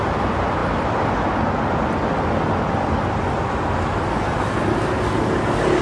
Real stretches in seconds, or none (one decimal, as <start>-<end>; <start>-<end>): 0.0-5.8